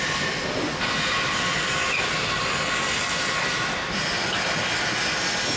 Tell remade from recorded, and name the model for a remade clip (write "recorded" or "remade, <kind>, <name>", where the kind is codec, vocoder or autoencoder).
recorded